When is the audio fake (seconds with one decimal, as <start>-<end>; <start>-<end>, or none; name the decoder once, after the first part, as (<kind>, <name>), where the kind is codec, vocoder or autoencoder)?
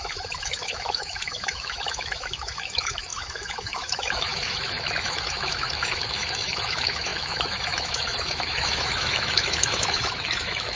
0.0-10.8 (autoencoder, DAC-VAE)